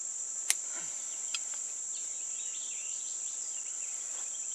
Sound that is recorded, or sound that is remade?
recorded